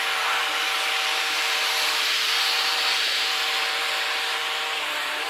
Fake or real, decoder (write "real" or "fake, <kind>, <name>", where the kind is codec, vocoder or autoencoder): fake, vocoder, BigVGAN v2